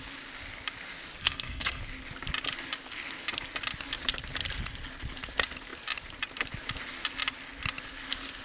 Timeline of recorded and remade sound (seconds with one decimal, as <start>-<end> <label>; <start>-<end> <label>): 0.0-1.2 recorded; 1.2-1.8 remade; 1.8-8.4 recorded